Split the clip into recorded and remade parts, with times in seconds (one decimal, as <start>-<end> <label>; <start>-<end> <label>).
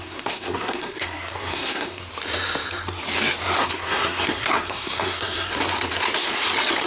0.0-2.1 remade; 2.1-3.6 recorded; 3.6-5.6 remade; 5.6-6.9 recorded